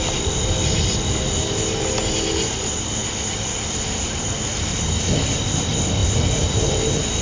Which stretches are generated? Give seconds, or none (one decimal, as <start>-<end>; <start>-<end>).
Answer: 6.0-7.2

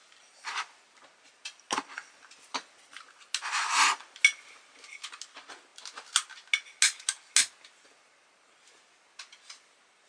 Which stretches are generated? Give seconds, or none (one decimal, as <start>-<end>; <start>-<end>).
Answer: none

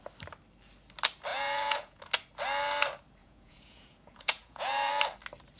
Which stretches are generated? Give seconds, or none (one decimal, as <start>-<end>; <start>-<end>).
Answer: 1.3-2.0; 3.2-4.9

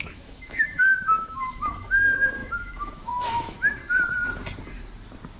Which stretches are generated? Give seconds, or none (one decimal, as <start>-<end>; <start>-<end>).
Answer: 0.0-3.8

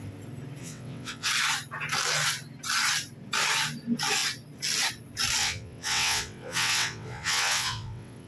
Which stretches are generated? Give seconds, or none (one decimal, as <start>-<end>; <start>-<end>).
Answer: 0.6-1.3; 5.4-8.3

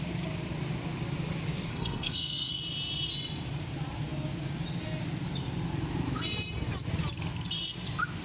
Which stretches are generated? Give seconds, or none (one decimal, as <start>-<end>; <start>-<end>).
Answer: 1.7-2.6